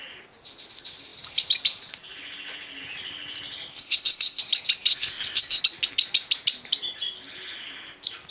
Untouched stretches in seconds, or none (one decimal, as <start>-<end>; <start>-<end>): 0.0-3.7; 4.4-4.9; 5.6-8.3